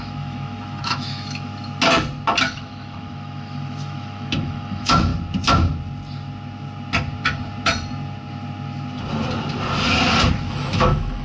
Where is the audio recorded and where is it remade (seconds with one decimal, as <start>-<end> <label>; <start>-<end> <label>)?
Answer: 0.0-1.5 remade; 1.5-2.4 recorded; 2.4-5.1 remade; 5.1-10.3 recorded; 10.3-11.2 remade

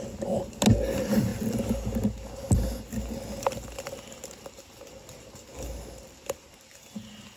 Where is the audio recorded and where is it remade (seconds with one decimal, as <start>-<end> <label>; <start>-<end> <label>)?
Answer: 0.0-7.4 recorded

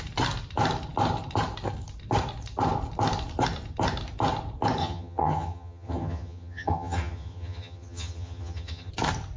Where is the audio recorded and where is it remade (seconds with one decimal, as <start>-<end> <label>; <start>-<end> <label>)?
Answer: 0.0-4.8 recorded; 4.8-8.9 remade; 8.9-9.4 recorded

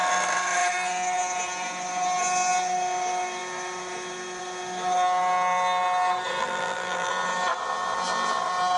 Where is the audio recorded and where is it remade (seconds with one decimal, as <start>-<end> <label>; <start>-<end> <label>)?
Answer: 0.0-6.4 recorded; 6.4-7.1 remade; 7.1-8.8 recorded

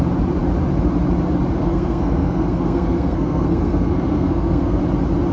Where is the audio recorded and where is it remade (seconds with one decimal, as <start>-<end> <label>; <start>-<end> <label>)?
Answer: 0.0-1.6 recorded; 1.6-4.8 remade; 4.8-5.3 recorded

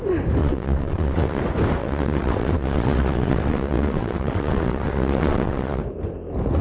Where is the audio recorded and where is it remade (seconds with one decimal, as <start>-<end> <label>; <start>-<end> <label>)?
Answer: 0.0-0.4 recorded; 0.4-1.4 remade; 1.4-1.8 recorded; 1.8-5.8 remade; 5.8-6.6 recorded

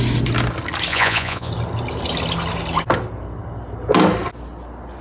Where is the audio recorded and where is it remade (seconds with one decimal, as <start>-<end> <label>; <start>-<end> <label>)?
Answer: 0.0-0.9 recorded; 0.9-1.5 remade; 1.5-5.0 recorded

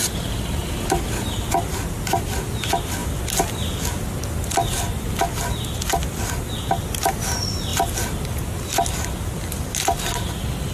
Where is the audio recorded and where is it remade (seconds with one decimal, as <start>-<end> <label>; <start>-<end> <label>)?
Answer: 0.0-10.7 recorded